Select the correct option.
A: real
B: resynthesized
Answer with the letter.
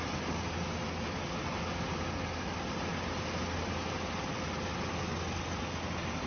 A